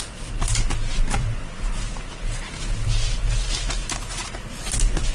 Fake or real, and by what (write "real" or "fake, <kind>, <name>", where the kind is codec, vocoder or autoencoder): real